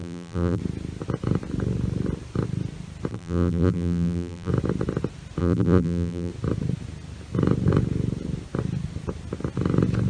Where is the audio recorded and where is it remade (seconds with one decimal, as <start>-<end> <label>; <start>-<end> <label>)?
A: 0.0-0.6 remade; 0.6-3.1 recorded; 3.1-4.5 remade; 4.5-5.4 recorded; 5.4-6.3 remade; 6.3-10.1 recorded